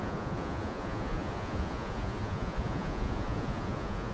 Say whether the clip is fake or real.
fake